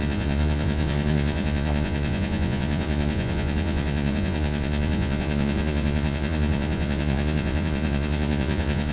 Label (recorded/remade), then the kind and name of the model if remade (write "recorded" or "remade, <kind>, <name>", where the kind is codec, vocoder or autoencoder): remade, vocoder, Vocos